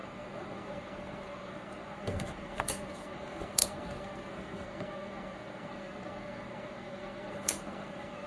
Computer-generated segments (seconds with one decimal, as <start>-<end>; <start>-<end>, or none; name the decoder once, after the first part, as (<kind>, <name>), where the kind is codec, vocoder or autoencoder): 0.0-8.3 (codec, SNAC)